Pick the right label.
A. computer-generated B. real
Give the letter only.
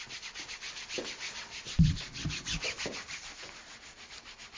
B